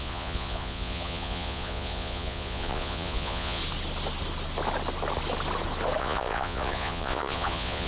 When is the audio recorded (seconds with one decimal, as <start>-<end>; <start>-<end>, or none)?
3.6-6.0